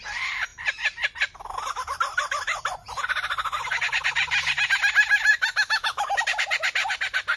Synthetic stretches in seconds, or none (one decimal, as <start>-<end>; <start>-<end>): 5.3-6.2